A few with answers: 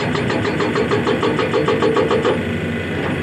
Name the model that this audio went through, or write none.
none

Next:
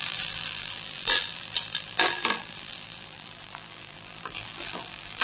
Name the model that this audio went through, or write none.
vocoder, BigVGAN v2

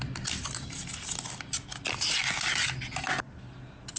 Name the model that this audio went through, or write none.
none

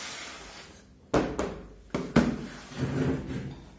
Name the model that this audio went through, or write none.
none